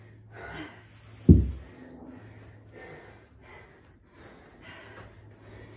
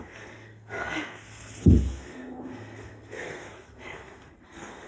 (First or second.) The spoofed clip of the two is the second